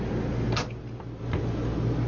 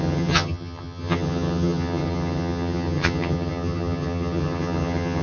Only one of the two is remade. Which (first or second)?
second